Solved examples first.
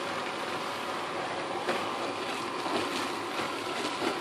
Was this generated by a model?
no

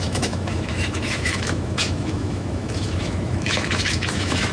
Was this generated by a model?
yes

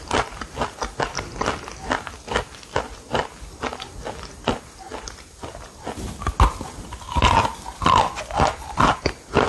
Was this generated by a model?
no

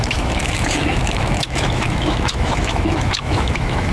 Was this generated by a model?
yes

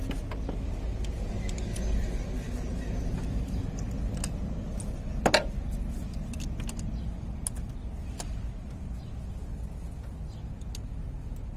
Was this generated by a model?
no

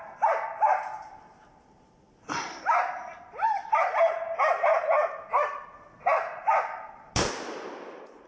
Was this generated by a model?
no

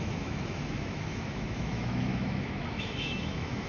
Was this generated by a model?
yes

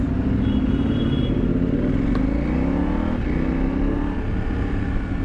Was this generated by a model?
no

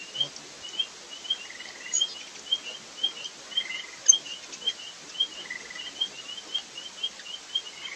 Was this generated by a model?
no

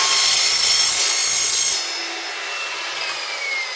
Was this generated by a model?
no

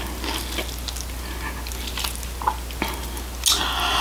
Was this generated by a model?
no